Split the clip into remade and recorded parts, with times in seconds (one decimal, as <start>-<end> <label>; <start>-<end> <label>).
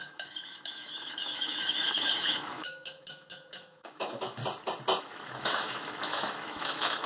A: 0.0-4.4 remade; 4.4-5.0 recorded; 5.0-7.1 remade